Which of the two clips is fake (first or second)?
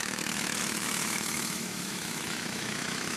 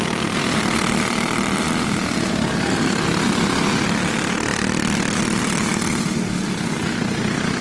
first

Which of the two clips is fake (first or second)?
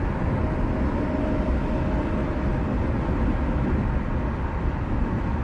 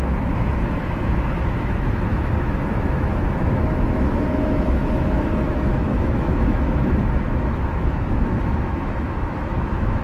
second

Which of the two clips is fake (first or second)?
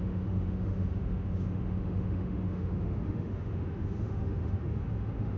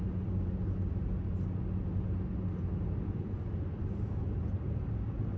first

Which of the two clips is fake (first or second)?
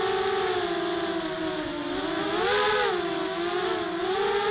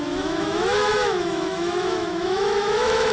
second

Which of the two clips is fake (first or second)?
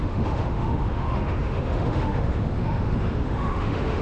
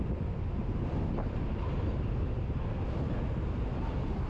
first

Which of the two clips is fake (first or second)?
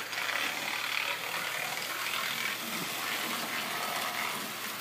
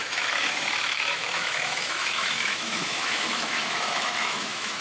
second